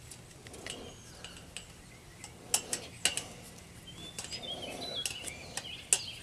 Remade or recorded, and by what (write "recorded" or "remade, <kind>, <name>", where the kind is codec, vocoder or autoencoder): recorded